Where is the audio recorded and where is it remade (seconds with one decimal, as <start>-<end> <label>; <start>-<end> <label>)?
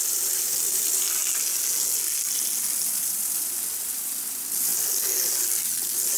0.0-1.2 remade; 1.2-3.1 recorded; 3.1-4.7 remade; 4.7-6.2 recorded